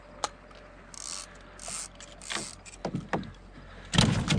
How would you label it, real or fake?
real